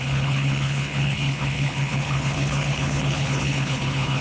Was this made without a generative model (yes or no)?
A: no